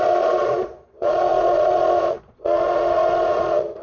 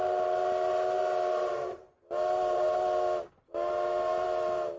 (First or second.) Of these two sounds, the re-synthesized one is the first